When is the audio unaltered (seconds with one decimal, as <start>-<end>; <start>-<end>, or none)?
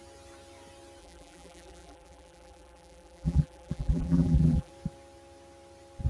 0.0-1.0; 4.7-6.1